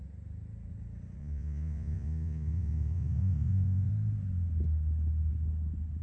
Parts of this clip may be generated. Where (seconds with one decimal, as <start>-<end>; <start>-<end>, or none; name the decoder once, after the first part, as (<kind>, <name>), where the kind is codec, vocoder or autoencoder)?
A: 1.2-3.9 (vocoder, Vocos)